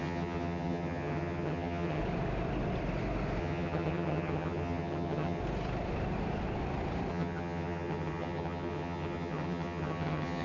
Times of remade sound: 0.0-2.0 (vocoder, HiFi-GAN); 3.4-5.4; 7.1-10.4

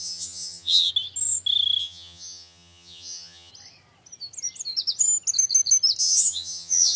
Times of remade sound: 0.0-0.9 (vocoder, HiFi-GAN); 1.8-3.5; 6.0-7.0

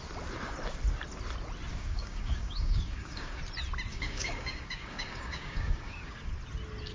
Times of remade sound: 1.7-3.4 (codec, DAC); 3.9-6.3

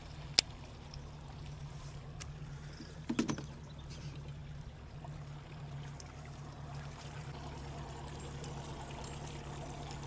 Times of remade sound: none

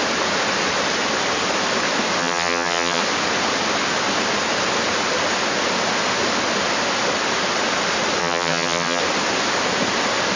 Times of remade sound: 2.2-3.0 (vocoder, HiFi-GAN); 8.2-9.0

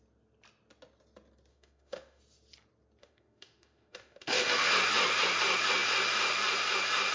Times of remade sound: 1.5-2.2 (autoencoder, DAC-VAE); 3.0-4.7

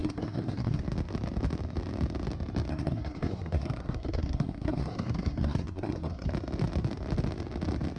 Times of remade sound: 0.0-0.8 (codec, SNAC); 2.7-6.3